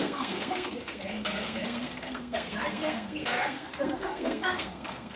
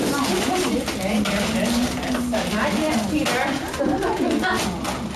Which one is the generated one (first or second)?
first